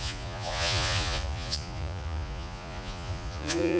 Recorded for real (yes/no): no